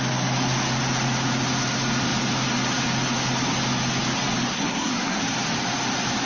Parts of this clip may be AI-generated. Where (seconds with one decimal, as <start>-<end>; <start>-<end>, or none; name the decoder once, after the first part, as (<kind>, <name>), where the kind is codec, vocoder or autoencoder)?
4.5-5.2 (codec, SNAC)